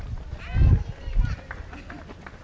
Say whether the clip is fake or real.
fake